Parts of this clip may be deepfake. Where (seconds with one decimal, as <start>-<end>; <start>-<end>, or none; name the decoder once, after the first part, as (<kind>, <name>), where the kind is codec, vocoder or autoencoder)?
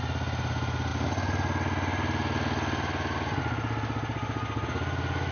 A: none